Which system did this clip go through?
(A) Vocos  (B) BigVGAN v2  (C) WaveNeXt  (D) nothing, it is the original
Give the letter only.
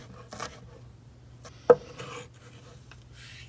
D